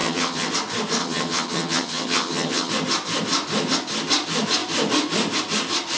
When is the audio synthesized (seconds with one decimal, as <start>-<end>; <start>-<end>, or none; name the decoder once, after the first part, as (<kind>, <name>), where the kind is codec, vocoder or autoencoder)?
0.0-0.5 (vocoder, HiFi-GAN); 1.0-2.7